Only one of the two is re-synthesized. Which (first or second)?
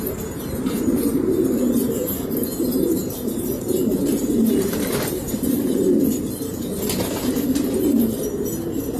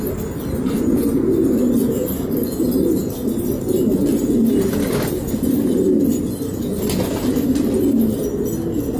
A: first